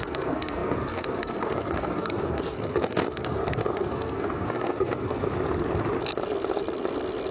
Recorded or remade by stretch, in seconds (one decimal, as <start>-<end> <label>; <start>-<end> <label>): 0.0-5.3 remade; 5.3-7.3 recorded